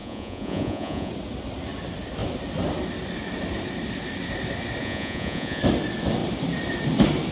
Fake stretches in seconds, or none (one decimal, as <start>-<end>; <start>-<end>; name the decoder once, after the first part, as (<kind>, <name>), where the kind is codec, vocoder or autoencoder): 0.0-1.1 (vocoder, Vocos); 4.8-5.6